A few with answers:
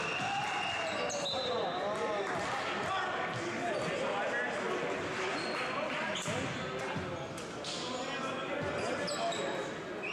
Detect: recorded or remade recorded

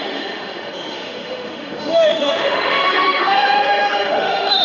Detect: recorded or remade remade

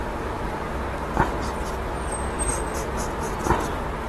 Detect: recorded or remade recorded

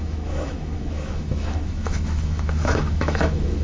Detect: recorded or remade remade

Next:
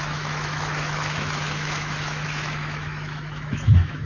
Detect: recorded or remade remade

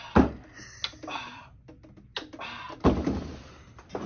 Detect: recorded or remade recorded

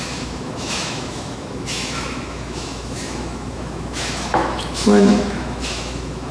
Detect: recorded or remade remade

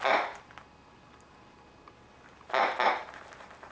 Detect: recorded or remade recorded